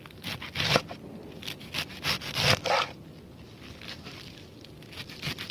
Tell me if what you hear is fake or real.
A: real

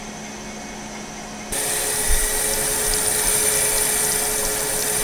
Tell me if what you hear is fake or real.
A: real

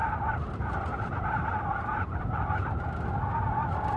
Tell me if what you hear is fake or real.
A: real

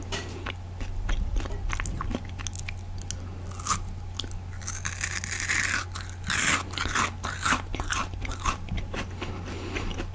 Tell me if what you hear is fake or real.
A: real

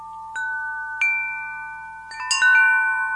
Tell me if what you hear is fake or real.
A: real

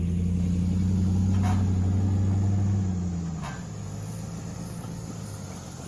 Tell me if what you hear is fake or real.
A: real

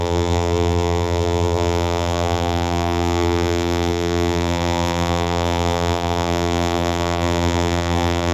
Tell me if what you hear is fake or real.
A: fake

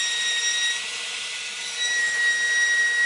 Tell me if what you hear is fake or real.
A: real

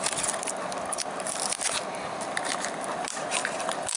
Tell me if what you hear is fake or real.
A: fake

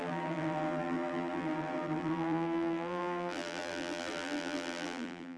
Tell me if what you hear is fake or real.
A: fake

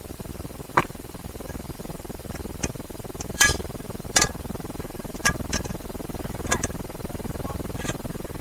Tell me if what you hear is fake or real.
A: fake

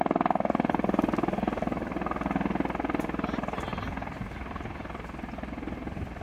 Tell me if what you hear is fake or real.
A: real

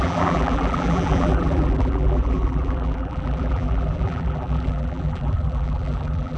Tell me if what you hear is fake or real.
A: fake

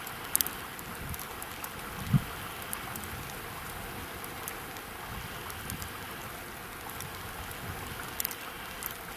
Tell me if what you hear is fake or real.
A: real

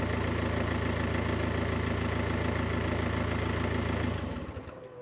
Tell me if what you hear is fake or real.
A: real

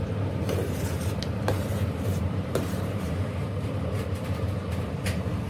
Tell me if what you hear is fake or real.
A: fake